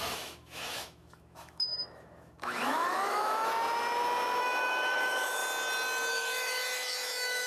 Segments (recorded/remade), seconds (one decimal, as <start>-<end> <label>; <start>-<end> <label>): 0.0-3.5 remade; 3.5-4.4 recorded; 4.4-5.4 remade; 5.4-6.1 recorded; 6.1-7.5 remade